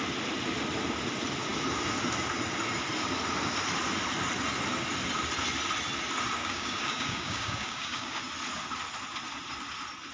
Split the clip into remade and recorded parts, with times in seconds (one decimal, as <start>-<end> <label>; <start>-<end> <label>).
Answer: 0.0-6.4 recorded; 6.4-8.2 remade; 8.2-10.1 recorded